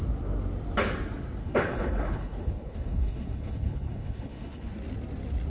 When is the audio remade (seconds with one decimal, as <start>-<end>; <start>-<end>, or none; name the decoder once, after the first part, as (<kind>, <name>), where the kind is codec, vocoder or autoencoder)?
1.4-4.7 (codec, HILCodec)